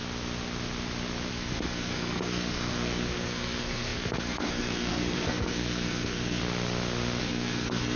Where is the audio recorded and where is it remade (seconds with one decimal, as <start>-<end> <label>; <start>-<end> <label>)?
0.0-1.3 recorded; 1.3-6.4 remade; 6.4-7.2 recorded; 7.2-8.0 remade